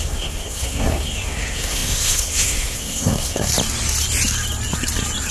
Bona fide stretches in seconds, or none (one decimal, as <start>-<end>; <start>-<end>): 3.5-5.3